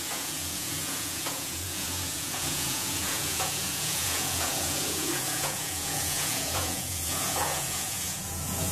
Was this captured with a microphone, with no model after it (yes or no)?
no